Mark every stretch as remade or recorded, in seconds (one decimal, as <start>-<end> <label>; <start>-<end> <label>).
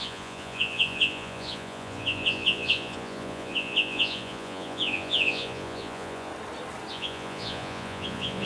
0.0-6.3 remade; 6.3-6.9 recorded; 6.9-8.5 remade